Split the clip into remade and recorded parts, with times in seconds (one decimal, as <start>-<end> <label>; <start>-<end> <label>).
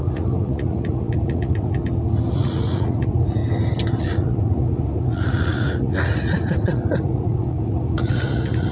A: 0.0-1.8 remade; 1.8-2.3 recorded; 2.3-3.4 remade; 3.4-4.0 recorded; 4.0-8.7 remade